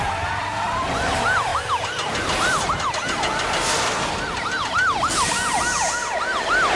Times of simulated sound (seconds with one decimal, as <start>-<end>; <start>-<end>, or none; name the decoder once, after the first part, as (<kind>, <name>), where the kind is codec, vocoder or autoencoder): none